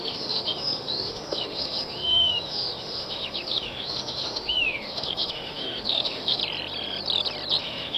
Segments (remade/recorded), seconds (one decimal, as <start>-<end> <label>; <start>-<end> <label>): 0.0-6.4 remade; 6.4-7.6 recorded; 7.6-8.0 remade